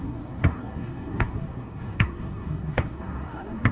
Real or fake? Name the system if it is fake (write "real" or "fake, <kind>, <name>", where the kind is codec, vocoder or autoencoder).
fake, codec, SNAC